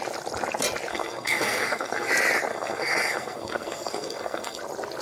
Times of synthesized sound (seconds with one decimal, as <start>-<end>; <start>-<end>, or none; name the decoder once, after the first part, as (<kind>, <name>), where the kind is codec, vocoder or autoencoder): 0.9-2.1 (codec, SNAC); 2.5-4.6